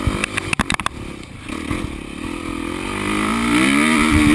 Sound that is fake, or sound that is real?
real